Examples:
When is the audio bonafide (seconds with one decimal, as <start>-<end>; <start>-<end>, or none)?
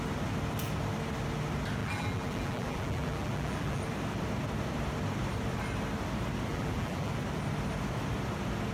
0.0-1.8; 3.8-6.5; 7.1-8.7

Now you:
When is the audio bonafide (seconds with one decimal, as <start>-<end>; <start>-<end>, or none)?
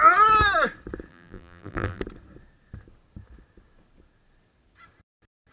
0.0-1.1; 2.0-5.5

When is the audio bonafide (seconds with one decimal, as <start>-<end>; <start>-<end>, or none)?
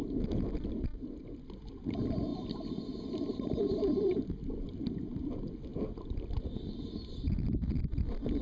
0.9-1.5; 5.7-6.5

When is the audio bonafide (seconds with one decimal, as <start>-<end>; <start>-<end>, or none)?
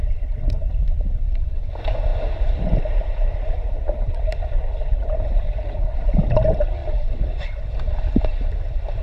0.0-0.6; 1.3-2.1; 5.6-9.0